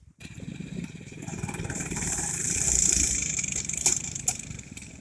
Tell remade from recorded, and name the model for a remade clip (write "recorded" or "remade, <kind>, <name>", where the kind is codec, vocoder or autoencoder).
remade, vocoder, BigVGAN v2